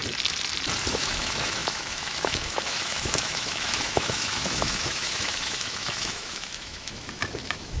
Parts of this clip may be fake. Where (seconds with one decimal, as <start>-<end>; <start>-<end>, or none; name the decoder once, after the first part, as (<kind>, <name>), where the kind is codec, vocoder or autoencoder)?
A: 0.9-7.8 (autoencoder, DAC-VAE)